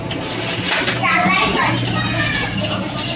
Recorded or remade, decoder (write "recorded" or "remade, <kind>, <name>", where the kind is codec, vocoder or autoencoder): recorded